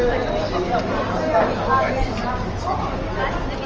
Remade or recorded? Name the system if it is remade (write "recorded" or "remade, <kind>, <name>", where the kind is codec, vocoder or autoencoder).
recorded